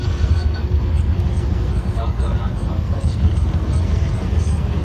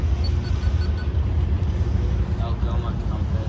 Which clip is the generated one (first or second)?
first